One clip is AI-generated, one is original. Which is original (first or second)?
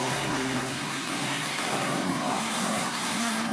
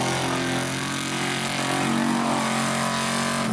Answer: second